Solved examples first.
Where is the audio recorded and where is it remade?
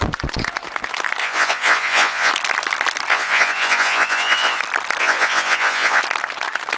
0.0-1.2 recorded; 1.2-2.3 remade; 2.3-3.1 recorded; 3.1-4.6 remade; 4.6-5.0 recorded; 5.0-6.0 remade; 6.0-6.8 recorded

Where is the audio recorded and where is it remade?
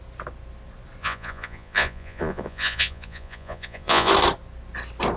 0.0-1.0 recorded; 1.0-4.1 remade; 4.1-5.2 recorded